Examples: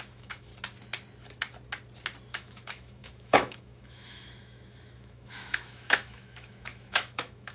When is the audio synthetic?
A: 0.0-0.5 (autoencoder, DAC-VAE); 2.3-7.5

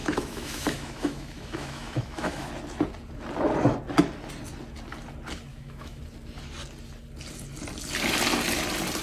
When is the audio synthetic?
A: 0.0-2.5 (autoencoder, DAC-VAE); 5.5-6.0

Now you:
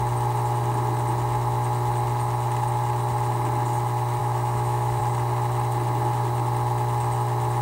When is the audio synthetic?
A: 4.2-5.0 (autoencoder, DAC-VAE)

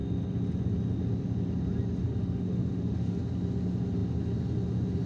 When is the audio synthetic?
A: 2.0-3.1 (autoencoder, DAC-VAE)

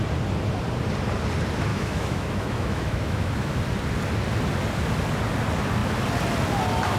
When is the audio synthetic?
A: 1.7-3.6 (autoencoder, DAC-VAE)

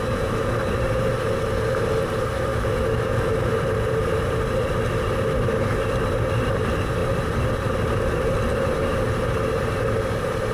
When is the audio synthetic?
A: 2.5-3.5 (autoencoder, DAC-VAE)